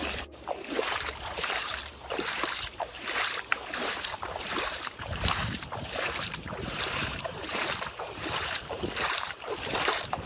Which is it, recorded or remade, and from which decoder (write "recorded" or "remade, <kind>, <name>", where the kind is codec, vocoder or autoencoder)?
remade, vocoder, BigVGAN v2